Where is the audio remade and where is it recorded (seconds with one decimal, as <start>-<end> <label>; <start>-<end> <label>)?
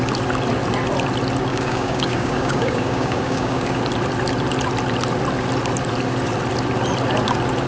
0.0-1.5 recorded; 1.5-3.8 remade; 3.8-7.7 recorded